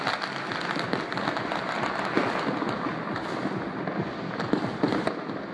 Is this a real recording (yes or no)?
yes